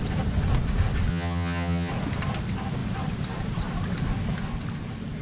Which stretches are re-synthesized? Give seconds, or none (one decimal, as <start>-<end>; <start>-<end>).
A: 1.1-1.9

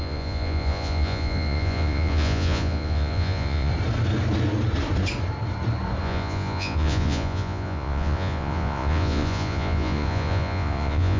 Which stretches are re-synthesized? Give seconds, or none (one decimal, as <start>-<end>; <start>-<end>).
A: 0.0-3.7; 6.0-11.2

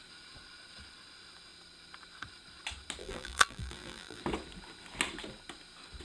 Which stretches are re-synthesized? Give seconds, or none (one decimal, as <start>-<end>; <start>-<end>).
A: 3.0-4.2

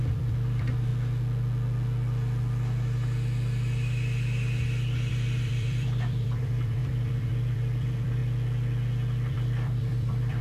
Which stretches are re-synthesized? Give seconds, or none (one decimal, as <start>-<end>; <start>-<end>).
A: 0.0-0.9; 5.1-8.2; 9.3-10.4

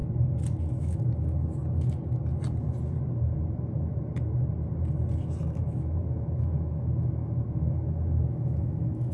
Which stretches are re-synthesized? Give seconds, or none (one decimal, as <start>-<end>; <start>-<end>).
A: 0.7-1.6; 5.6-9.1